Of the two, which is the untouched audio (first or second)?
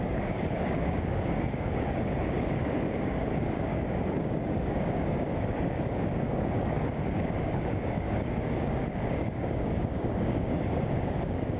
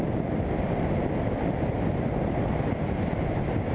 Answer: second